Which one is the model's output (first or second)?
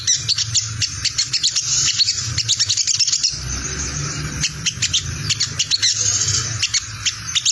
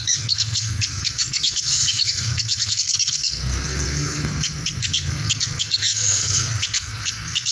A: second